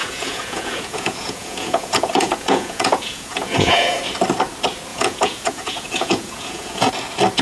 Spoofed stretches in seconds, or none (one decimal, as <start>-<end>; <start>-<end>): 0.0-4.0; 4.9-6.9